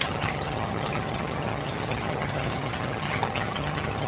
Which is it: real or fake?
fake